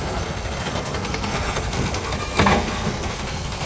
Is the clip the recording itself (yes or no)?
no